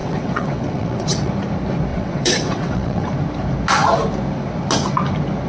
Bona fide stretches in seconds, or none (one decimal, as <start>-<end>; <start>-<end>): 1.3-1.9; 3.1-5.5